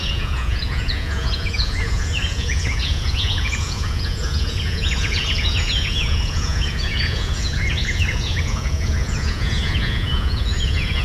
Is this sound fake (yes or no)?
yes